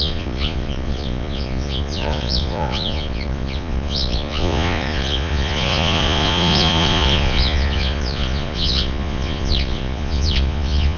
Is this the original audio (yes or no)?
no